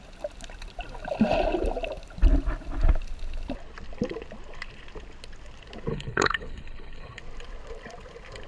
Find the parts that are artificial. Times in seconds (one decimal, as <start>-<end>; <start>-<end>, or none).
5.9-7.2

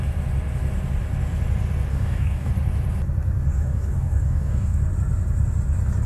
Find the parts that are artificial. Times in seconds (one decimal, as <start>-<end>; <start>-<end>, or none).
1.9-2.5; 3.5-4.8